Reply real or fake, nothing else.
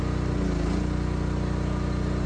real